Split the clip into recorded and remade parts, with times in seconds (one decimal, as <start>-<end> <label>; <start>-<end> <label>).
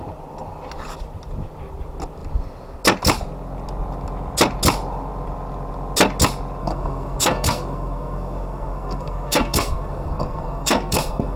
0.0-6.6 recorded; 6.6-11.4 remade